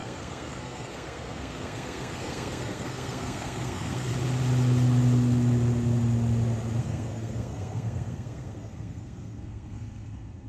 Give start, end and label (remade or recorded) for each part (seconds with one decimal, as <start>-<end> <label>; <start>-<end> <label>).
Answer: 0.0-4.1 remade; 4.1-6.8 recorded; 6.8-10.5 remade